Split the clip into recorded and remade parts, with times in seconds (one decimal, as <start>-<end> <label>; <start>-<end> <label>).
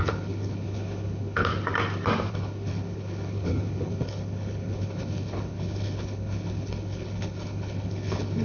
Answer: 0.0-1.5 remade; 1.5-2.3 recorded; 2.3-8.4 remade